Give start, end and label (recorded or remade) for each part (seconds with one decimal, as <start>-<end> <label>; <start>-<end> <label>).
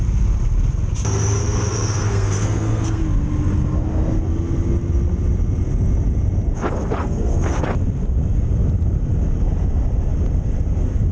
0.0-1.4 recorded; 1.4-3.0 remade; 3.0-7.0 recorded; 7.0-7.6 remade; 7.6-11.1 recorded